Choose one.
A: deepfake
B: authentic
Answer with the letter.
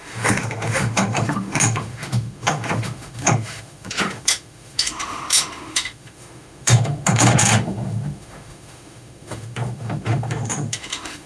A